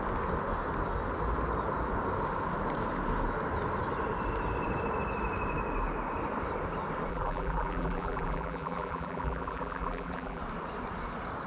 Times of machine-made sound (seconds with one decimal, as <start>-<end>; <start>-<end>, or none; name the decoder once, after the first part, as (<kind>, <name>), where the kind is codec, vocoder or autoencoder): 7.1-10.4 (vocoder, BigVGAN v2)